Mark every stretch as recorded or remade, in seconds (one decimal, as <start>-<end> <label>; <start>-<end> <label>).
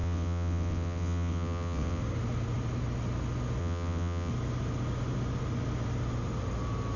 0.0-2.0 remade; 2.0-3.6 recorded; 3.6-4.3 remade; 4.3-7.0 recorded